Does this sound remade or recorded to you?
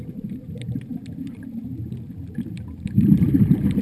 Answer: remade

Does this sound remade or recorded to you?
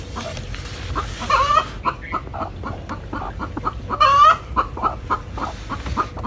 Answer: recorded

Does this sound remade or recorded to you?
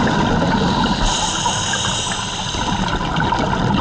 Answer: recorded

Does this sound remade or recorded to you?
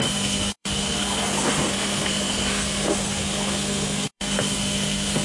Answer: remade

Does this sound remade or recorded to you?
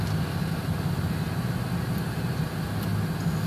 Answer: recorded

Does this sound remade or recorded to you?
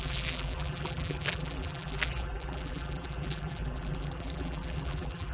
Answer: remade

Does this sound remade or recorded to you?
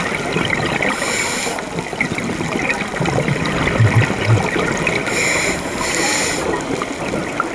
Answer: recorded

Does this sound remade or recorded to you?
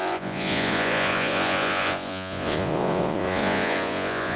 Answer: remade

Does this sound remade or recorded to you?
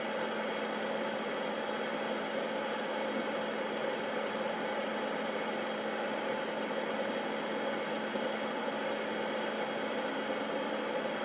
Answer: recorded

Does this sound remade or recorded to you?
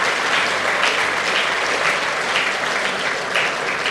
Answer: recorded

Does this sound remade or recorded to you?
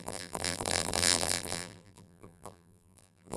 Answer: remade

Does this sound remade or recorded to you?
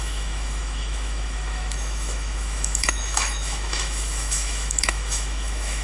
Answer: remade